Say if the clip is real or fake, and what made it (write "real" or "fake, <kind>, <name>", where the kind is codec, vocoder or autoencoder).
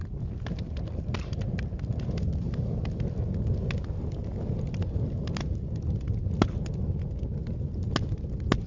real